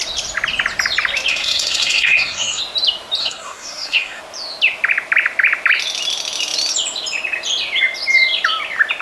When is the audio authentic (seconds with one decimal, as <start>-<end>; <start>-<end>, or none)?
0.0-1.3; 2.6-3.2; 4.2-9.0